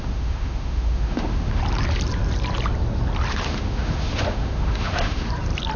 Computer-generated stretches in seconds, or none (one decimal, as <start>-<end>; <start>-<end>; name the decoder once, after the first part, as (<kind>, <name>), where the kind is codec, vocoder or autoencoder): 0.0-1.6 (autoencoder, DAC-VAE); 3.3-5.3